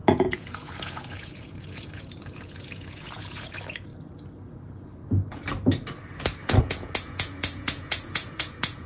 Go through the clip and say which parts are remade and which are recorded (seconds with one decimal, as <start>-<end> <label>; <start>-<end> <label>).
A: 0.0-3.9 remade; 3.9-6.6 recorded; 6.6-8.9 remade